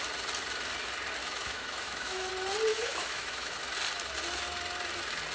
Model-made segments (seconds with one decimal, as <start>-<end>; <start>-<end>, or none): 1.2-2.3; 2.7-3.6